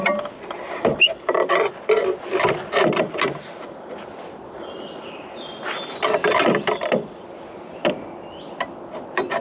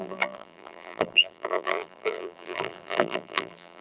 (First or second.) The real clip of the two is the first